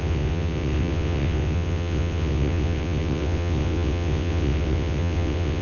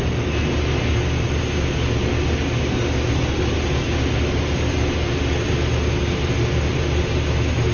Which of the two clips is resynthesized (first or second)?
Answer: first